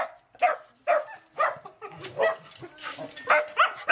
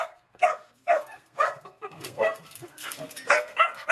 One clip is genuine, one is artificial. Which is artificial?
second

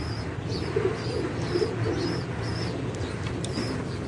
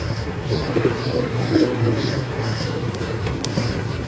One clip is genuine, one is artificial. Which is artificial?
second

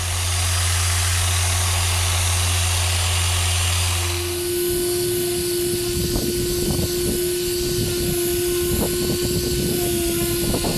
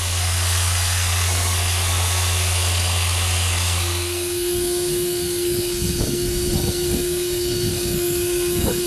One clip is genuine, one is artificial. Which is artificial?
second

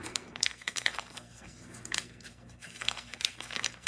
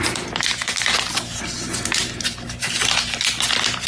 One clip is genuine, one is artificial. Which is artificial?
first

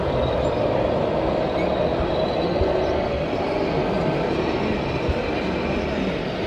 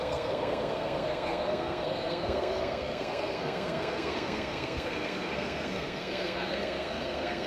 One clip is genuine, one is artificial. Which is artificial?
second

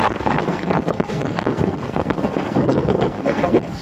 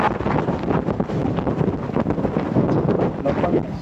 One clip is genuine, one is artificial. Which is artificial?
first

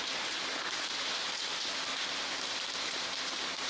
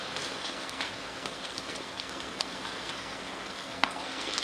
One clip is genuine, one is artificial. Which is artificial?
second